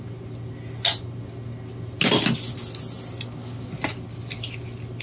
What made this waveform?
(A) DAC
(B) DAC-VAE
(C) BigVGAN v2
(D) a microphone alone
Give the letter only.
D